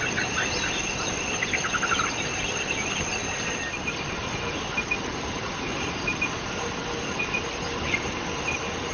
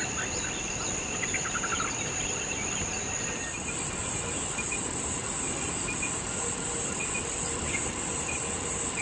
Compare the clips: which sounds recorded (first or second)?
first